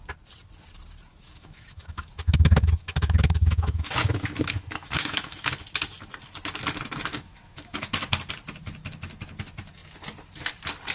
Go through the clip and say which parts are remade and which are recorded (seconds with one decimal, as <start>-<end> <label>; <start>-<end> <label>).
0.0-1.1 recorded; 1.1-5.5 remade; 5.5-7.1 recorded; 7.1-8.2 remade; 8.2-10.9 recorded